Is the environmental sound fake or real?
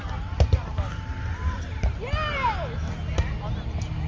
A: real